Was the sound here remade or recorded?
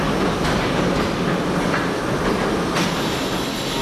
recorded